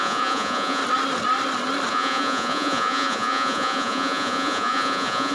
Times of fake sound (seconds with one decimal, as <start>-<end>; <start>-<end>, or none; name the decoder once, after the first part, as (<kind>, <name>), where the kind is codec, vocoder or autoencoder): 0.0-0.8 (vocoder, Vocos); 1.9-5.3